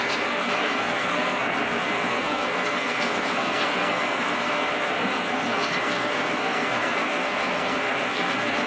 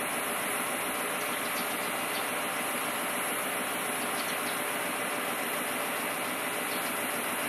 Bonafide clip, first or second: second